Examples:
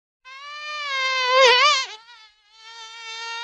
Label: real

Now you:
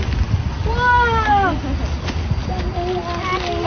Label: real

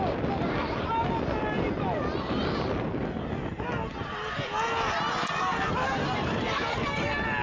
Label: real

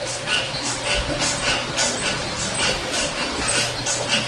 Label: real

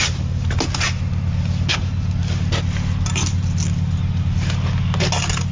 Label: real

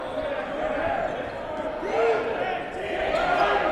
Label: real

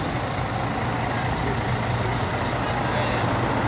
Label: real